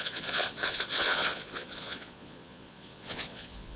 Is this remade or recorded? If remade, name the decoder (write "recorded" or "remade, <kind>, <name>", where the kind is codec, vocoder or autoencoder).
remade, vocoder, Vocos